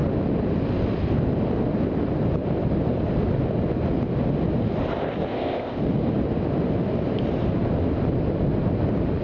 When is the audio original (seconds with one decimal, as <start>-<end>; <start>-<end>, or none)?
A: 0.0-5.3; 5.8-9.2